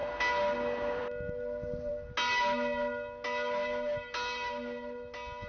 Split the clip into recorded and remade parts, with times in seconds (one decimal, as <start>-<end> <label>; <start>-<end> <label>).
0.0-5.5 recorded